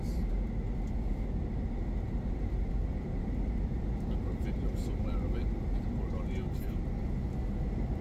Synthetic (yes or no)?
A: no